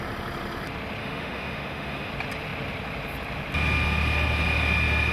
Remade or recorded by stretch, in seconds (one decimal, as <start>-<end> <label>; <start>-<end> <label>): 0.0-1.0 recorded; 1.0-2.1 remade; 2.1-5.1 recorded